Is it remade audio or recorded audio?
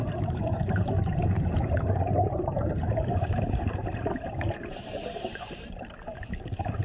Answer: remade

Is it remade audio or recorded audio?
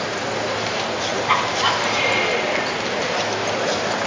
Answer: recorded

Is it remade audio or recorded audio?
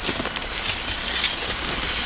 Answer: recorded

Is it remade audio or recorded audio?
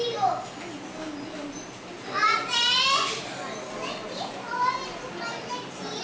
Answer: recorded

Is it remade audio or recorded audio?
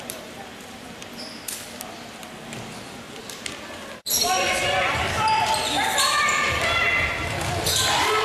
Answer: remade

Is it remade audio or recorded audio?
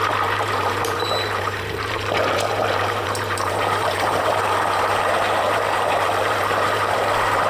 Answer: remade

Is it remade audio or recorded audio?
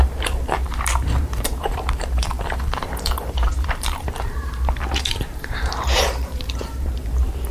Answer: remade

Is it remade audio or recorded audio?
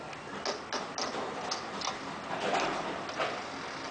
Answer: recorded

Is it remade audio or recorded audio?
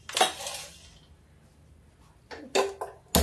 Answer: recorded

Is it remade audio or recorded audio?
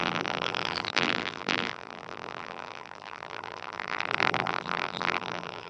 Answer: remade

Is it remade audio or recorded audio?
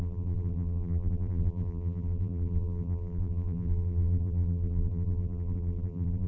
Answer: remade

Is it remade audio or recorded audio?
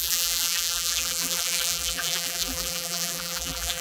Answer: remade